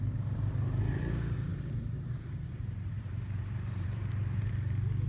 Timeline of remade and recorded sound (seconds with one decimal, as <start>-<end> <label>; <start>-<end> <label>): 0.0-1.5 recorded; 1.5-4.5 remade; 4.5-5.1 recorded

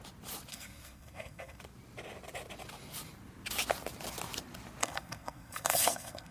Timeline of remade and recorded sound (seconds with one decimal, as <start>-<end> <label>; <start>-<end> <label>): 0.0-0.5 recorded; 0.5-1.6 remade; 1.6-4.8 recorded; 4.8-6.3 remade

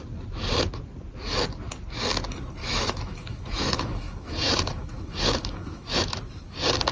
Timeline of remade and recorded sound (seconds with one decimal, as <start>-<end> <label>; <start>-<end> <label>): 0.0-2.6 recorded; 2.6-6.2 remade; 6.2-6.9 recorded

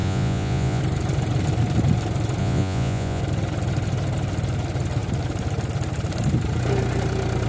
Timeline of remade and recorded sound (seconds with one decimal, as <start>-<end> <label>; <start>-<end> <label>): 0.0-0.8 remade; 0.8-2.4 recorded; 2.4-3.2 remade; 3.2-7.5 recorded

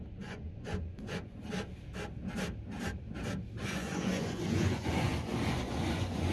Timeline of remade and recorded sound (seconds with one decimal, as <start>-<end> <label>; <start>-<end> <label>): 0.0-1.4 remade; 1.4-3.6 recorded; 3.6-6.3 remade

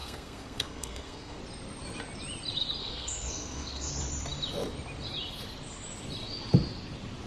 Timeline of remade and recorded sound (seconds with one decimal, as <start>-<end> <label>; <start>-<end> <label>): 0.0-1.4 remade; 1.4-2.8 recorded; 2.8-3.9 remade; 3.9-7.3 recorded

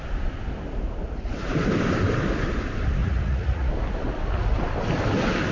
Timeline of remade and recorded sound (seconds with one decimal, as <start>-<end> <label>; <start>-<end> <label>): 0.0-3.0 recorded; 3.0-3.7 remade; 3.7-5.5 recorded